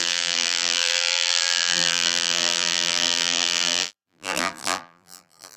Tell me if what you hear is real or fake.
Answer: fake